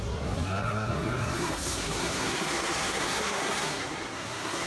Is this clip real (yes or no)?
no